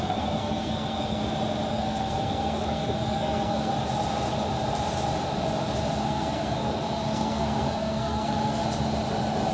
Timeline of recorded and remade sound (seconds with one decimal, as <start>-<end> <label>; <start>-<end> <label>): 0.0-1.2 remade; 1.2-1.7 recorded; 1.7-3.7 remade; 3.7-6.0 recorded; 6.0-8.6 remade; 8.6-9.5 recorded